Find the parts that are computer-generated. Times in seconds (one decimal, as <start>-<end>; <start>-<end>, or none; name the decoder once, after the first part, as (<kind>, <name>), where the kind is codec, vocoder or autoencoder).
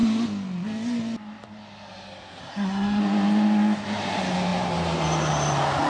2.4-3.0 (codec, SNAC)